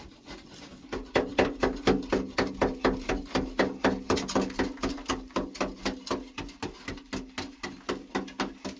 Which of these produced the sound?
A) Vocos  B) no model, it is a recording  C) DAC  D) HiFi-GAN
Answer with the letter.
B